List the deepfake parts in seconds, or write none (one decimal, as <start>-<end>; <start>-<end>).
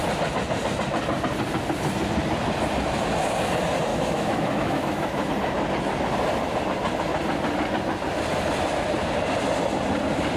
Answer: 3.9-5.3